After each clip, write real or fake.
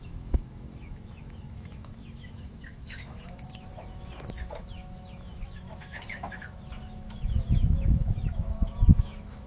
fake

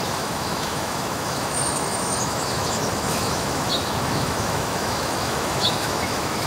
fake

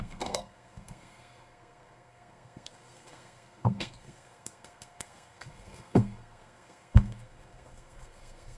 fake